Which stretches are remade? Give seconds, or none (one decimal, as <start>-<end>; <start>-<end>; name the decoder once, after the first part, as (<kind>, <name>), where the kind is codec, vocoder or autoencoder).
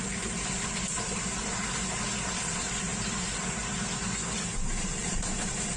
0.0-5.8 (vocoder, BigVGAN v2)